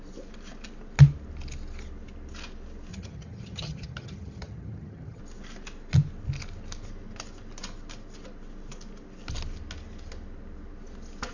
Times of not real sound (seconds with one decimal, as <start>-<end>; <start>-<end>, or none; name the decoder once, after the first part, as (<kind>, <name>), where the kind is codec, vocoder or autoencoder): 2.9-5.2 (vocoder, HiFi-GAN)